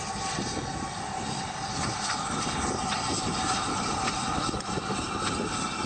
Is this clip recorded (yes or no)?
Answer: yes